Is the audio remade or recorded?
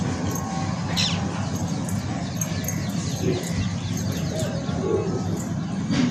recorded